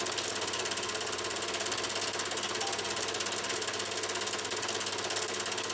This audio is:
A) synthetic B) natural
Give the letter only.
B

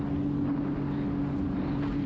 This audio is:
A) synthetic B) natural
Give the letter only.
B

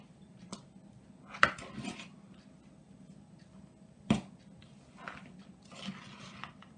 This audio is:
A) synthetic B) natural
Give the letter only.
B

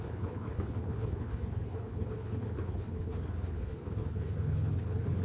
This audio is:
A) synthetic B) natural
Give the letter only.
A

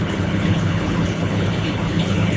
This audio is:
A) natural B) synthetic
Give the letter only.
B